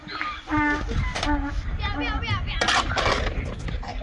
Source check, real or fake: real